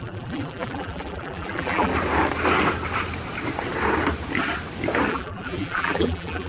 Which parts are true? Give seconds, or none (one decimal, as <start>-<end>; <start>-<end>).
1.9-5.1